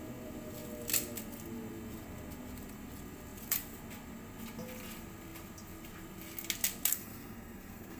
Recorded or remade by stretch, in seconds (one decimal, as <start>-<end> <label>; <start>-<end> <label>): 0.0-6.9 recorded; 6.9-8.0 remade